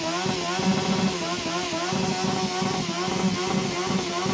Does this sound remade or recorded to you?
recorded